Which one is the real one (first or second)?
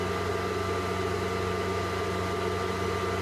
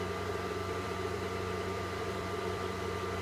first